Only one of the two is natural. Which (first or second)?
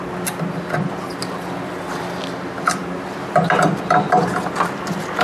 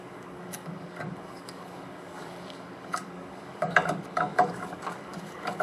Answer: first